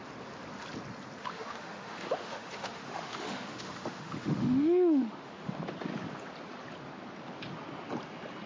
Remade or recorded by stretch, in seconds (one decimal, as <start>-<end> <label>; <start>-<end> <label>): 0.0-1.2 recorded; 1.2-5.6 remade; 5.6-8.5 recorded

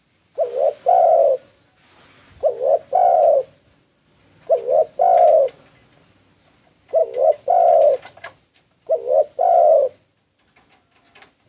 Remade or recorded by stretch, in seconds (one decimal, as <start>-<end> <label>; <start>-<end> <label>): 0.0-11.5 recorded

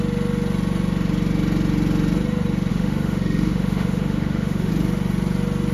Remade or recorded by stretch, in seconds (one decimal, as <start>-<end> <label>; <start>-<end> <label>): 0.0-2.7 recorded; 2.7-4.7 remade; 4.7-5.7 recorded